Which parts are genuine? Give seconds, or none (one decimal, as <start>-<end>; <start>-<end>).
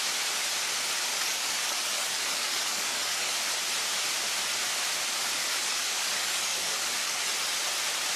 0.0-1.1; 3.4-5.4; 7.3-8.2